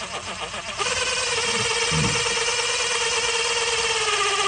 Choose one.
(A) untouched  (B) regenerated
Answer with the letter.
A